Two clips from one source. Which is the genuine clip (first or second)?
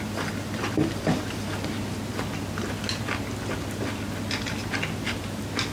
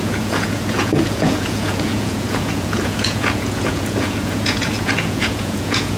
first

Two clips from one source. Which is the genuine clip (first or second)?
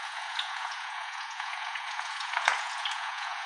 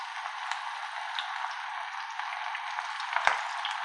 second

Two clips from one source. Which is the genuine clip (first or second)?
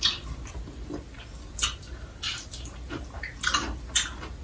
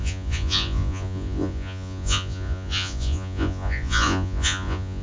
first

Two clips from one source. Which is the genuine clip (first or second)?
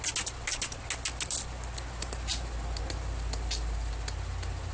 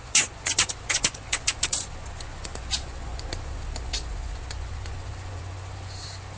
first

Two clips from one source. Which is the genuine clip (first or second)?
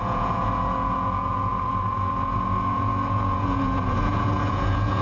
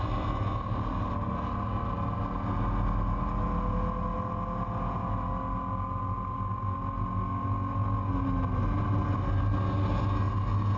second